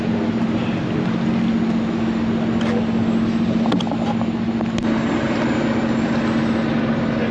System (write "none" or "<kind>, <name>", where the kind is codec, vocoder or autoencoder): none